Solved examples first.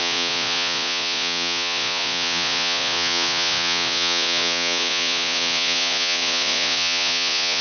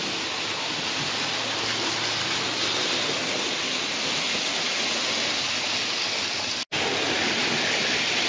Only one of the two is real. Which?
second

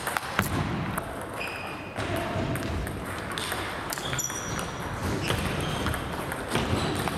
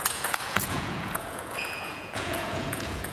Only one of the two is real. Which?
first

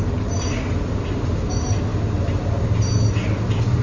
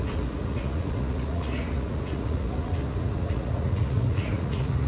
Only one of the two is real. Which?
first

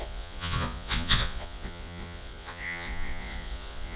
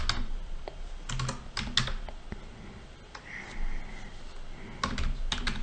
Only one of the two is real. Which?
second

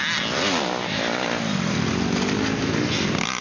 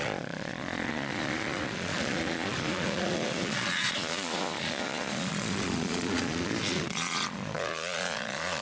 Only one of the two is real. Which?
first